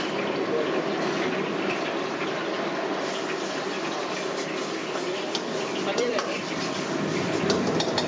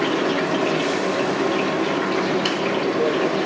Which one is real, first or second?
second